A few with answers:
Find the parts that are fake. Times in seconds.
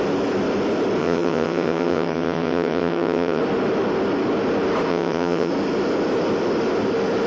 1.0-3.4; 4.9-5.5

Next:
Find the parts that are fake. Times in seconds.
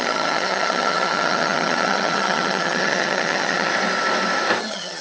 0.0-3.7; 4.6-5.0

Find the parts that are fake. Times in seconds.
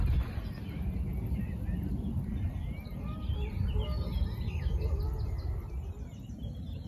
none